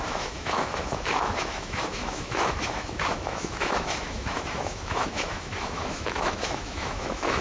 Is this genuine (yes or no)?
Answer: no